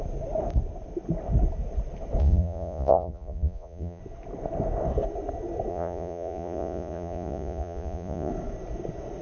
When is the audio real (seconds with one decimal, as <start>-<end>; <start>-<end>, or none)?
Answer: 0.0-2.2; 4.0-5.7; 8.3-9.2